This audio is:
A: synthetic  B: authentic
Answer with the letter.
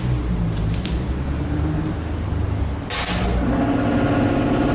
B